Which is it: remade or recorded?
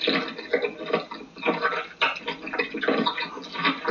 recorded